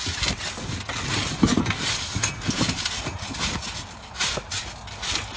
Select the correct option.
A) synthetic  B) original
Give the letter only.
B